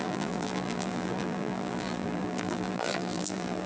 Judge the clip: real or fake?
fake